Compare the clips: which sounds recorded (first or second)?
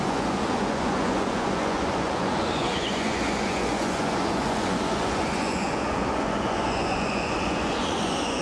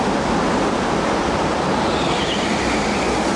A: second